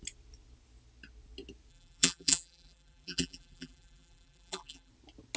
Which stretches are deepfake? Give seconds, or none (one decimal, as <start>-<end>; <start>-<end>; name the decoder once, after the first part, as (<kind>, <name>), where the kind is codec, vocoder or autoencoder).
1.7-4.9 (vocoder, BigVGAN v2)